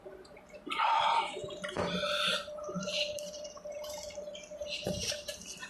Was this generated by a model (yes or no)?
yes